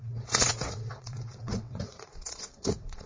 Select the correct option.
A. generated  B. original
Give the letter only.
A